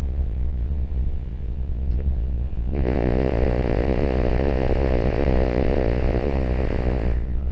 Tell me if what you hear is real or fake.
fake